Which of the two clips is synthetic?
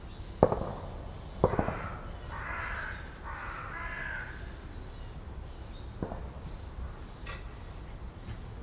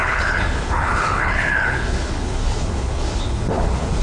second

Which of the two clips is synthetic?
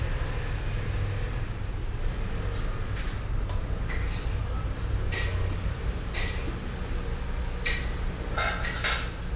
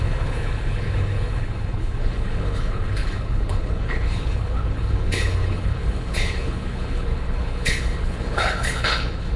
second